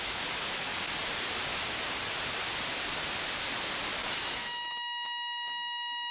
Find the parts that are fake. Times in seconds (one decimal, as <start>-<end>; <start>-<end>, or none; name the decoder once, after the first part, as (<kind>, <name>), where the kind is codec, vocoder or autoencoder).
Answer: 0.0-0.7 (autoencoder, DAC-VAE); 4.3-6.1